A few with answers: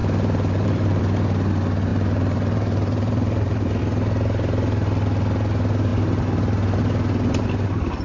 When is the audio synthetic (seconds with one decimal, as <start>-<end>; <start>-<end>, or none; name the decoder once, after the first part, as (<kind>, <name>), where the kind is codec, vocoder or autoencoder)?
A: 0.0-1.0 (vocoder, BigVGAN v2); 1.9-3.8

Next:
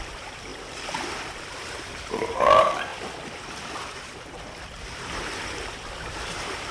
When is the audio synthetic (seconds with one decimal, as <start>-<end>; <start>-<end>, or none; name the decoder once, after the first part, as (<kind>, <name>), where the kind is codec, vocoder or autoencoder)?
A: 0.0-0.5 (vocoder, BigVGAN v2); 1.4-2.9; 5.2-6.7

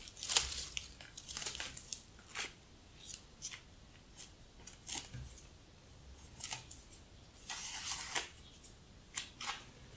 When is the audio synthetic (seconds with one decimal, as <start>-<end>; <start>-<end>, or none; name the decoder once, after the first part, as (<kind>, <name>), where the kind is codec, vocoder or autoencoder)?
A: none

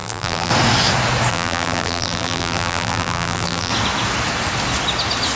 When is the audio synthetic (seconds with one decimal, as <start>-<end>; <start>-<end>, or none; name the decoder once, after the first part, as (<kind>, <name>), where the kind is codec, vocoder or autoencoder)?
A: 0.0-0.5 (vocoder, BigVGAN v2); 1.3-3.7

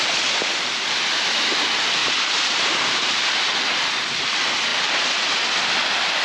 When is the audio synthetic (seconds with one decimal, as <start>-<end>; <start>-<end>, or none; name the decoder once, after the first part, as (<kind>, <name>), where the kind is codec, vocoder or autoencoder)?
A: 2.0-3.3 (vocoder, BigVGAN v2)

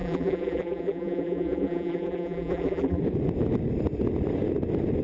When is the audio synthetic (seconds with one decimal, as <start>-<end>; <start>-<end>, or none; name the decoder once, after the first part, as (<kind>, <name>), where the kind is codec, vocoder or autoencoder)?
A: 0.0-3.0 (vocoder, BigVGAN v2)